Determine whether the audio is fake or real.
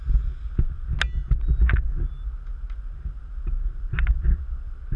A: real